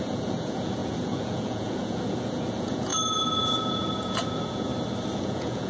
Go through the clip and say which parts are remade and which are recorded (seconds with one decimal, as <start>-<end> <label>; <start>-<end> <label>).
0.0-4.7 remade; 4.7-5.2 recorded; 5.2-5.7 remade